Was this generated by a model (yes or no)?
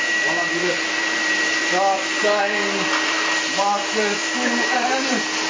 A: yes